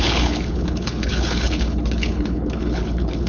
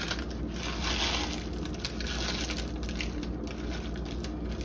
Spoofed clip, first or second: first